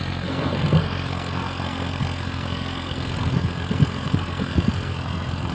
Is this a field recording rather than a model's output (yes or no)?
no